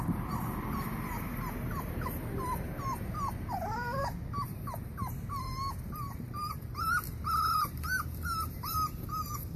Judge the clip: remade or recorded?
remade